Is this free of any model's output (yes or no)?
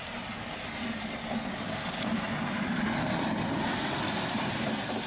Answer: yes